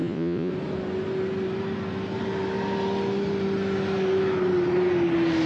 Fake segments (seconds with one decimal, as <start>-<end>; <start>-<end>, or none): 0.0-0.5